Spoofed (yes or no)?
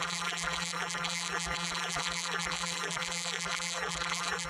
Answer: yes